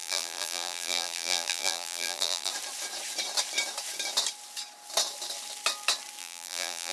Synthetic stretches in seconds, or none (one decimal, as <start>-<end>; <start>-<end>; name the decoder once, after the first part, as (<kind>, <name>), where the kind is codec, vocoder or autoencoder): 0.0-2.5 (vocoder, BigVGAN v2); 6.2-6.9